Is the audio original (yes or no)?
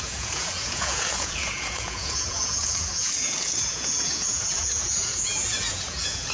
no